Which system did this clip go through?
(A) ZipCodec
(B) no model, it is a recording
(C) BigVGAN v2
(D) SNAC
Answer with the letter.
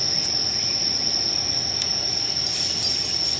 B